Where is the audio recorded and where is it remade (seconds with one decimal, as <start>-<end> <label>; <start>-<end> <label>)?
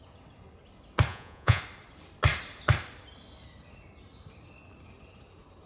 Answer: 0.0-1.1 recorded; 1.1-1.6 remade; 1.6-5.7 recorded